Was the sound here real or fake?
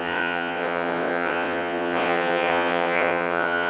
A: fake